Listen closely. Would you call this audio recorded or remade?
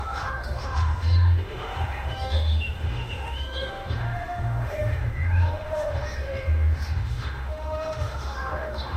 remade